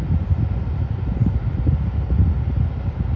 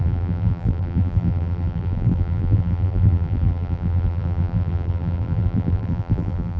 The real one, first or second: first